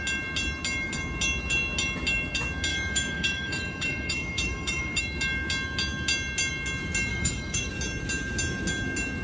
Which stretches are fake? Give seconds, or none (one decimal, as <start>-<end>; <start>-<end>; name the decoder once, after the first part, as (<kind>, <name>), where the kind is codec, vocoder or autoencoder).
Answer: 2.7-5.0 (autoencoder, DAC-VAE); 7.1-7.7